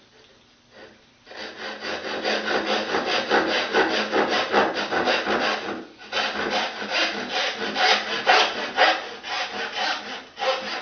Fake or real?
real